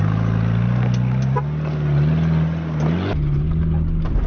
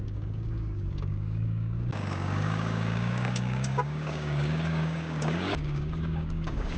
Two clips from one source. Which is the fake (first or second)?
second